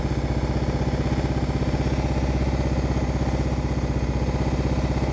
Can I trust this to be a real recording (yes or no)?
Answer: yes